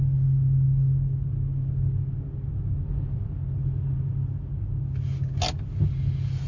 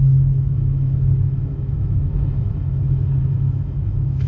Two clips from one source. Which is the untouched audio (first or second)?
first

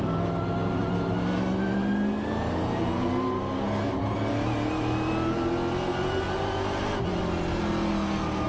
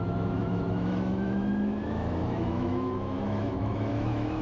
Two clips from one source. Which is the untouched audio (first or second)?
first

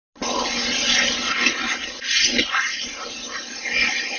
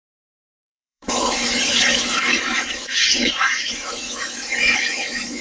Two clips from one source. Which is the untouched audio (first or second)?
first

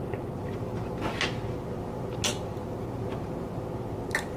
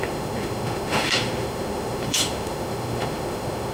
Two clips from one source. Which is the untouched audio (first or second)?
first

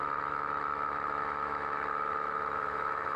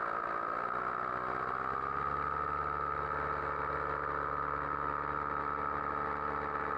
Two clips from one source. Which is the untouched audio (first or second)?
second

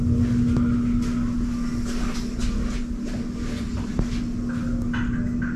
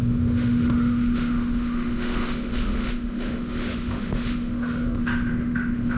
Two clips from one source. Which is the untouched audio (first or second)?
first